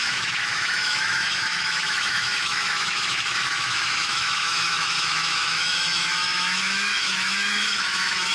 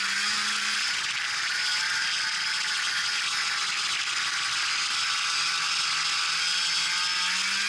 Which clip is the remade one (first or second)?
first